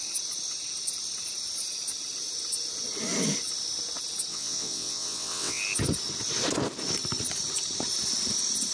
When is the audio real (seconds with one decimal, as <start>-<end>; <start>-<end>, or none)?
0.0-4.3; 5.6-8.7